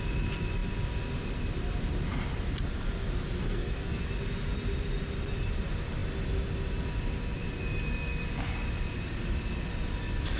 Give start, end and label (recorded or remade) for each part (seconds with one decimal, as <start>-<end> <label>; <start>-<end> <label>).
0.0-3.4 recorded; 3.4-4.0 remade; 4.0-10.4 recorded